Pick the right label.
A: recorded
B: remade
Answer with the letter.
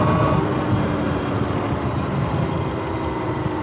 A